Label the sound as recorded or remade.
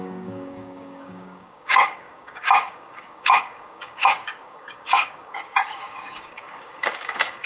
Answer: remade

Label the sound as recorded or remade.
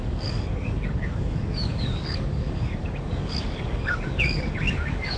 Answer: remade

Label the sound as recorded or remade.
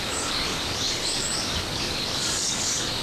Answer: remade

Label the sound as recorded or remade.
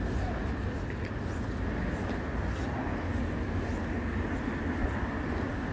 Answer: recorded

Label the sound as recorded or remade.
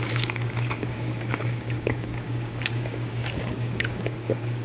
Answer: remade